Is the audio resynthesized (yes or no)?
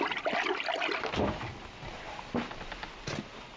no